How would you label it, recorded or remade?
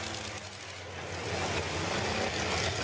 recorded